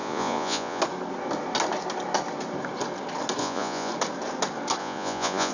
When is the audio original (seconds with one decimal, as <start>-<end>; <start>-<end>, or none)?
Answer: 0.8-3.4; 3.9-4.8